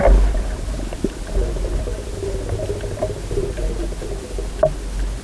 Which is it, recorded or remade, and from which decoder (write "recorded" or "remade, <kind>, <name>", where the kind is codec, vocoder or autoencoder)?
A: recorded